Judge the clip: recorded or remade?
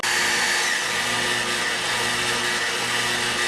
recorded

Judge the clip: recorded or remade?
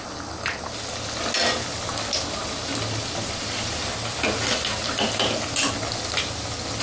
recorded